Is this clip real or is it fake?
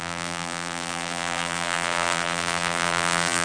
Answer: fake